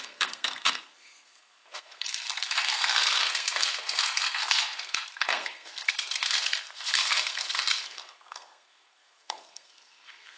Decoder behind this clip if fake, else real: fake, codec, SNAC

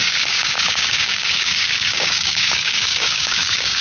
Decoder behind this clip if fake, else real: fake, codec, DAC